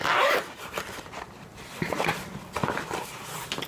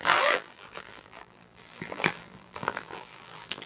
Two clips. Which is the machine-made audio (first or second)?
second